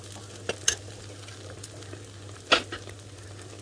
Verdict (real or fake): real